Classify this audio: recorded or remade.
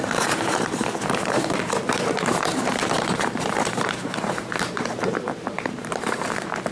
remade